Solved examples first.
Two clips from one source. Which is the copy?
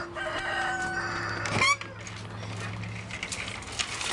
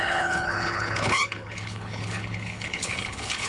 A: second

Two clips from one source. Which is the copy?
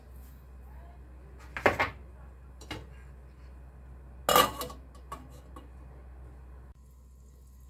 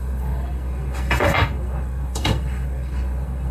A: second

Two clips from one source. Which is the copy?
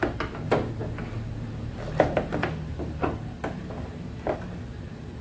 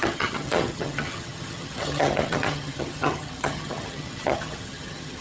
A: second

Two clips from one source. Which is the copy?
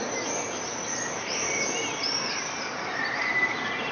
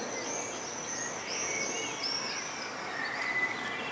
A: first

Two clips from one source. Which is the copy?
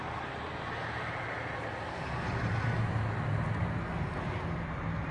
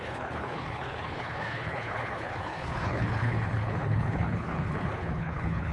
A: second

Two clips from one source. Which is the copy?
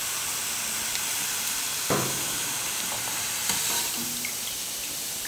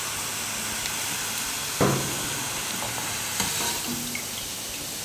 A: first